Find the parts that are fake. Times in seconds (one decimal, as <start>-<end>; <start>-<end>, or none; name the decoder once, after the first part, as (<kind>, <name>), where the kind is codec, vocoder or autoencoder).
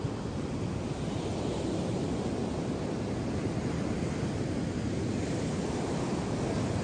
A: none